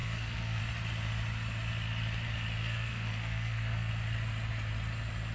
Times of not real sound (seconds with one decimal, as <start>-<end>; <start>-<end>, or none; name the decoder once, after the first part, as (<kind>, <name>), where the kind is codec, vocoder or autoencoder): 0.0-0.6 (codec, SNAC); 2.6-3.9